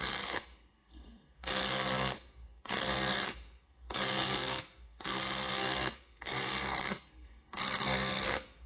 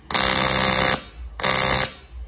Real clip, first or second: second